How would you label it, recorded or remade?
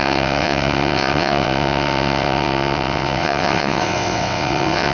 remade